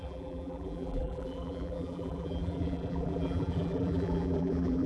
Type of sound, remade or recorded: remade